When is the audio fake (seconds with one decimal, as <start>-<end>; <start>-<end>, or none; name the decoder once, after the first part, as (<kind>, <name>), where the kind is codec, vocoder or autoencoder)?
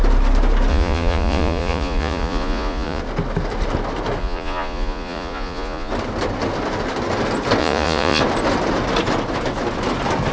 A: 0.7-3.0 (vocoder, Vocos); 4.2-5.9; 7.6-8.2